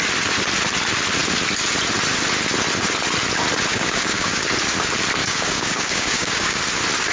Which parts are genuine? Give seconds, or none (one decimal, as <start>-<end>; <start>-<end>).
0.0-3.7; 4.4-5.2; 6.6-7.1